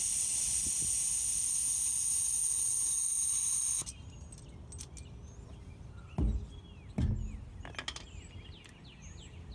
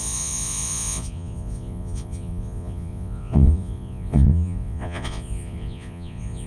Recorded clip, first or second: first